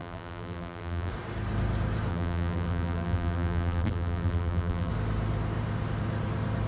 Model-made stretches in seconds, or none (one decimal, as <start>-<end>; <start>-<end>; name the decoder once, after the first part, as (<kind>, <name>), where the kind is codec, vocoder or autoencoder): 0.0-1.1 (vocoder, BigVGAN v2); 2.1-4.9